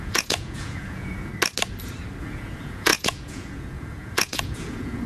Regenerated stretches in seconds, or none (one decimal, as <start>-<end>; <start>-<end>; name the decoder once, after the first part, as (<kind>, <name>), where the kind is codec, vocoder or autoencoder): 0.0-1.3 (vocoder, Vocos); 2.2-5.1